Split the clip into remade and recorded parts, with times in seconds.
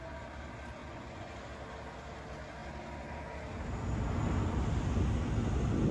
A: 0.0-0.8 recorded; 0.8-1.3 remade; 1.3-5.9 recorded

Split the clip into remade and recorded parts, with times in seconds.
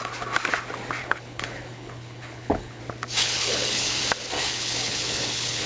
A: 0.0-1.0 recorded; 1.0-2.8 remade; 2.8-3.2 recorded; 3.2-4.0 remade; 4.0-4.4 recorded; 4.4-5.7 remade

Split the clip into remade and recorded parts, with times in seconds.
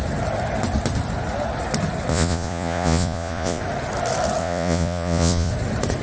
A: 0.0-2.1 recorded; 2.1-3.6 remade; 3.6-4.4 recorded; 4.4-5.5 remade; 5.5-6.0 recorded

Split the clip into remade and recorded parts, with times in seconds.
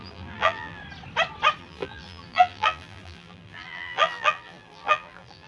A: 0.0-0.8 remade; 0.8-1.6 recorded; 1.6-5.5 remade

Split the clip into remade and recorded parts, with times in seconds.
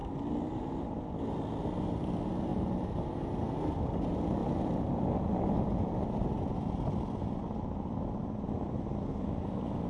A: 0.0-2.5 recorded; 2.5-3.0 remade; 3.0-4.4 recorded; 4.4-5.3 remade; 5.3-9.9 recorded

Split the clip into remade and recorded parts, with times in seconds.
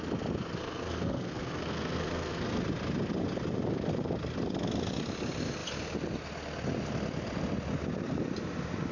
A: 0.0-0.6 recorded; 0.6-2.6 remade; 2.6-8.9 recorded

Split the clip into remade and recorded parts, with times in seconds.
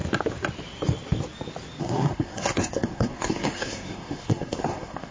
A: 0.0-1.8 recorded; 1.8-5.1 remade